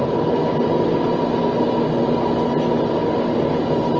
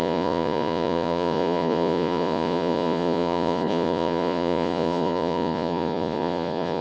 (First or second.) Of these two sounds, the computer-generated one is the second